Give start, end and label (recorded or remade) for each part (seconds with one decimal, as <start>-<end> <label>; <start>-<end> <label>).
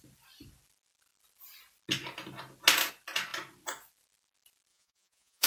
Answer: 0.0-4.7 recorded; 4.7-5.5 remade